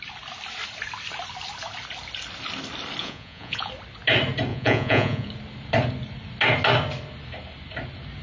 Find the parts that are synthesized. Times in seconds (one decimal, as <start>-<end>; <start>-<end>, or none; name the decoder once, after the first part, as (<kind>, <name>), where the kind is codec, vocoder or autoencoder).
3.0-3.7 (vocoder, Vocos); 4.5-5.3